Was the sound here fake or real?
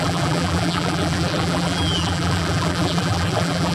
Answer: fake